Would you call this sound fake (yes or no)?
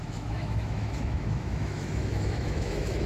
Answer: yes